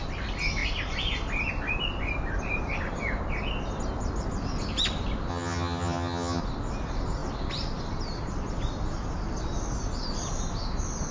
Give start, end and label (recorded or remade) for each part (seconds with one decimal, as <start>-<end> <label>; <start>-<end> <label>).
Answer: 0.0-5.3 recorded; 5.3-6.4 remade; 6.4-11.1 recorded